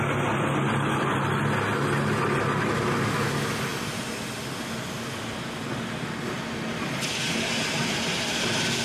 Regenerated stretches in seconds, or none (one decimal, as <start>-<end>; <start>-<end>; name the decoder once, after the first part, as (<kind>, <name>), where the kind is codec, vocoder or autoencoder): none